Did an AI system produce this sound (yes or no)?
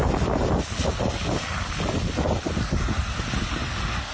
no